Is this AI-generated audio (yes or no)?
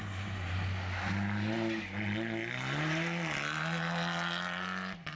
no